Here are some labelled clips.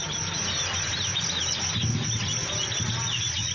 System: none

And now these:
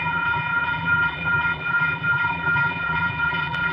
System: vocoder, BigVGAN v2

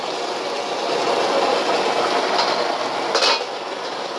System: none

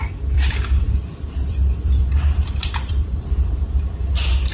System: vocoder, BigVGAN v2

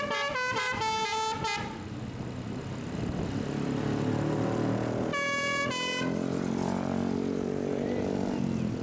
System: none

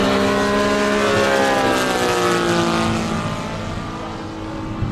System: none